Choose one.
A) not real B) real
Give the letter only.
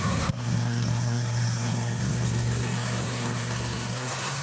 A